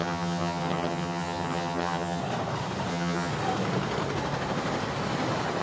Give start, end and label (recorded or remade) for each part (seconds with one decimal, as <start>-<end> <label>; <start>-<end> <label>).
0.0-2.2 remade; 2.2-2.9 recorded; 2.9-3.3 remade; 3.3-5.6 recorded